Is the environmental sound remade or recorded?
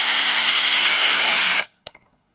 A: remade